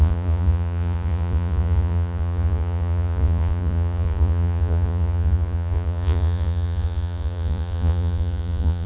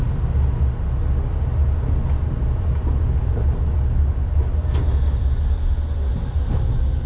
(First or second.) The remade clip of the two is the first